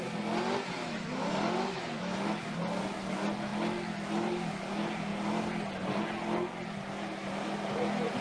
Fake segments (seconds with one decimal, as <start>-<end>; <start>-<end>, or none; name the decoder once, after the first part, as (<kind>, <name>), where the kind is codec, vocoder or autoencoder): 0.8-2.5 (autoencoder, DAC-VAE)